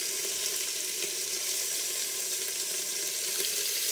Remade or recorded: remade